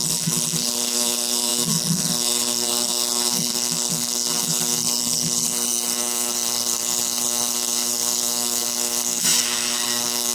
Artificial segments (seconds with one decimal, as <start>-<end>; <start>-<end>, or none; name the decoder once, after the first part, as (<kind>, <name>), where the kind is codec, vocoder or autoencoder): 0.0-10.3 (codec, SNAC)